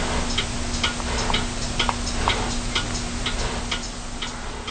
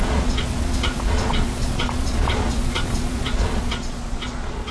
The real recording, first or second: first